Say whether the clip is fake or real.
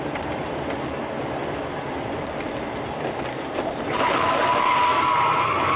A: real